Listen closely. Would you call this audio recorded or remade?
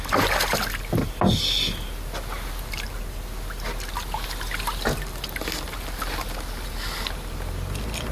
recorded